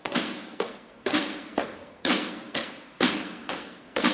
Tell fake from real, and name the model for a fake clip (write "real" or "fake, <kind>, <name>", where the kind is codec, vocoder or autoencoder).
fake, codec, SNAC